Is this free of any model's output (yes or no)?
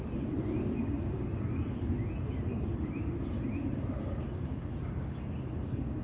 yes